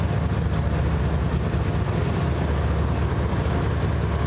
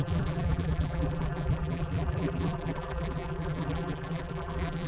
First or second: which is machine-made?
second